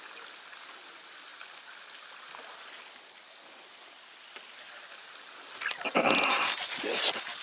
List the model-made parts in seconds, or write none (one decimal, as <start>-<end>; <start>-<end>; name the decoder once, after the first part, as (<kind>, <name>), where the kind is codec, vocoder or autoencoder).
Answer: none